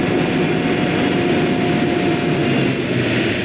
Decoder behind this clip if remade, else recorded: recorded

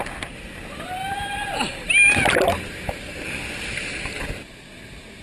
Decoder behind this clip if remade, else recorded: recorded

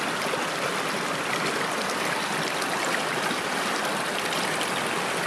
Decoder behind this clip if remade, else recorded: recorded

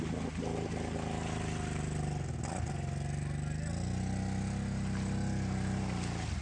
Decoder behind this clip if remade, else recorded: recorded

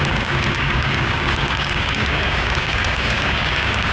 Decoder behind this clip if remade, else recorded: remade, codec, DAC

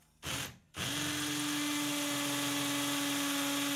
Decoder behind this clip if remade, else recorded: recorded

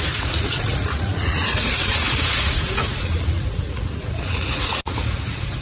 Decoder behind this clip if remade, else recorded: remade, vocoder, Vocos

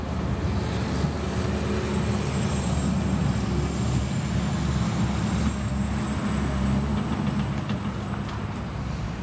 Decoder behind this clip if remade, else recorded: recorded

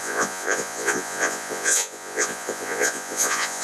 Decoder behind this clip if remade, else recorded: remade, vocoder, Vocos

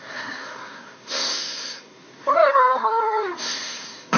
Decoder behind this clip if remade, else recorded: remade, codec, SNAC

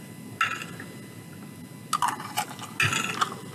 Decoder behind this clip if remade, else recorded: recorded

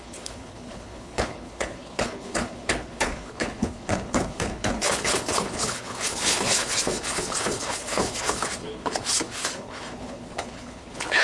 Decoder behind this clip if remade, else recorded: remade, codec, HILCodec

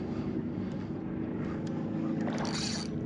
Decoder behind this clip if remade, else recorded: recorded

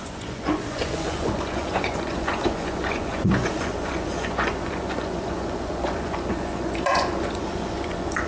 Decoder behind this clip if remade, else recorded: remade, vocoder, Vocos